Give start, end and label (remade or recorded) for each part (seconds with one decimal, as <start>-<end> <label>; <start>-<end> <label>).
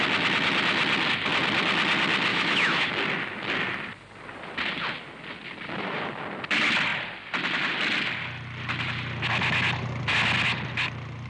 0.0-2.3 recorded; 2.3-2.9 remade; 2.9-11.3 recorded